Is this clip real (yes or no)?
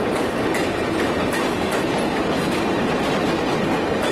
yes